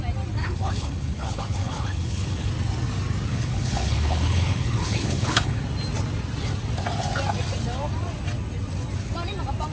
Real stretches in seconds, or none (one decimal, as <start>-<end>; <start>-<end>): 0.0-0.4; 2.5-3.3; 5.6-9.7